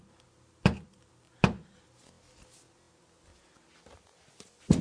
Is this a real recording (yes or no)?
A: yes